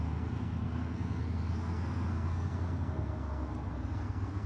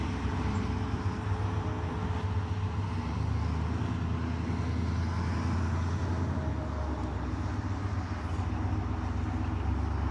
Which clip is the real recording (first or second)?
second